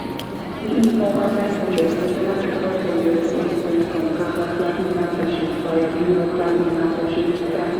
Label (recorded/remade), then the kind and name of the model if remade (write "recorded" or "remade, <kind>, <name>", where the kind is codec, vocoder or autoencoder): recorded